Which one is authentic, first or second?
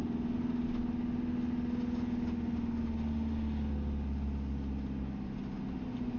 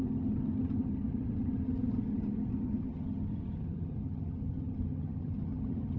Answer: first